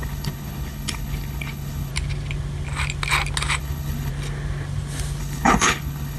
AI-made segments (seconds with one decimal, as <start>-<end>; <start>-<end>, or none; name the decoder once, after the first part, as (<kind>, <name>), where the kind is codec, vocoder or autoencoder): 0.0-1.9 (codec, HILCodec); 3.6-4.1; 5.2-6.2